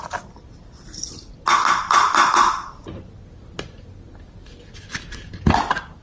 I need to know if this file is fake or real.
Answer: real